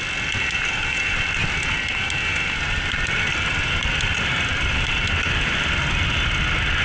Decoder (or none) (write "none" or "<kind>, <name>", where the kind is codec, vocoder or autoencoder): none